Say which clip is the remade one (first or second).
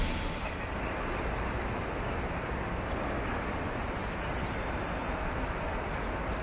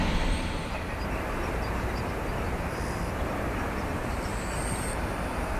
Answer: second